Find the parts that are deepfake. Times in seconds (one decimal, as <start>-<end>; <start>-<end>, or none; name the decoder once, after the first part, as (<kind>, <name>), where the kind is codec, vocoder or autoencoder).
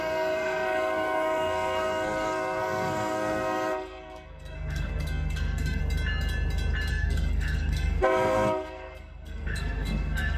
0.0-5.8 (codec, SNAC); 6.9-10.4